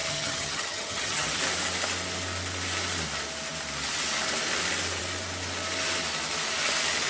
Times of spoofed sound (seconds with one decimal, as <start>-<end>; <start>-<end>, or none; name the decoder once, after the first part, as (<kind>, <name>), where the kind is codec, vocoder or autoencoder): 0.0-1.4 (vocoder, HiFi-GAN)